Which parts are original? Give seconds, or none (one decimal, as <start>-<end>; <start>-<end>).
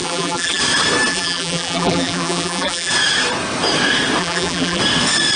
0.6-1.1; 2.9-4.2; 4.8-5.4